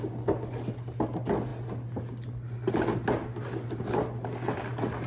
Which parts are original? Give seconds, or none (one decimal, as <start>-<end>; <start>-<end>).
0.0-5.1